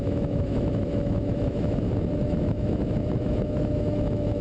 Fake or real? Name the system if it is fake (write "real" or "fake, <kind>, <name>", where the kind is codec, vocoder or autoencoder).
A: fake, autoencoder, DAC-VAE